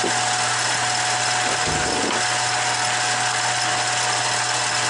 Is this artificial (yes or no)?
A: no